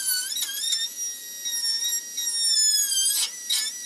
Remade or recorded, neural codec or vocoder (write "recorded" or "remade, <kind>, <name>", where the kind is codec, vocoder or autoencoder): recorded